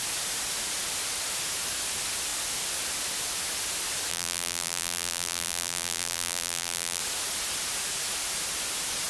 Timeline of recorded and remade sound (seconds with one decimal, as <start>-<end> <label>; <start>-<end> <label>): 0.0-4.1 recorded; 4.1-7.0 remade; 7.0-9.1 recorded